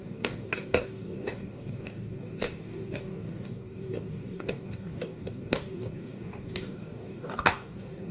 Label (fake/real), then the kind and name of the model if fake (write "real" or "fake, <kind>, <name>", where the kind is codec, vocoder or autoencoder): fake, codec, DAC